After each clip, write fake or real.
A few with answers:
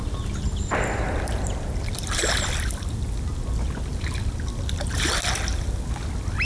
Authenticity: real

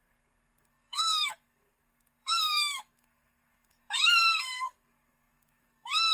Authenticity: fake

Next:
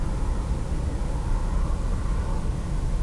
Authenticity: real